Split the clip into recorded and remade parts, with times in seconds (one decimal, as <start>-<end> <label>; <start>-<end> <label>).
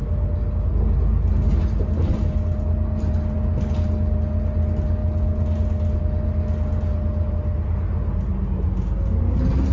0.0-9.7 recorded